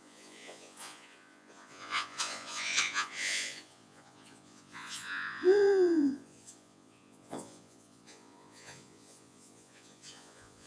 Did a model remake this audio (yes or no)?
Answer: yes